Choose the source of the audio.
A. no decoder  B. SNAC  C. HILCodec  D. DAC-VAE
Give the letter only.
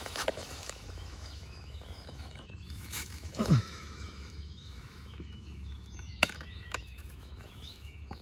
D